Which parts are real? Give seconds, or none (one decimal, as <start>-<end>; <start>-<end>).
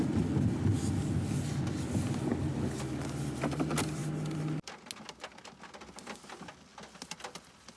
0.0-7.8